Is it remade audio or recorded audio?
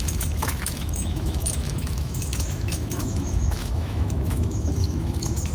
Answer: remade